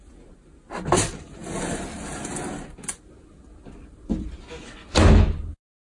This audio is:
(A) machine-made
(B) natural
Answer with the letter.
B